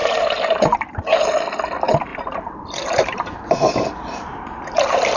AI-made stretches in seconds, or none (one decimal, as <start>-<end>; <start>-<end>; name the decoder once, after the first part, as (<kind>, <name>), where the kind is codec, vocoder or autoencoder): 0.0-1.3 (vocoder, BigVGAN v2); 2.1-5.2